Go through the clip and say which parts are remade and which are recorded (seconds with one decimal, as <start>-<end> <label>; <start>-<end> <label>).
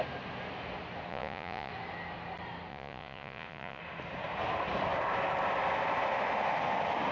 0.0-1.1 recorded; 1.1-1.7 remade; 1.7-2.7 recorded; 2.7-3.8 remade; 3.8-7.1 recorded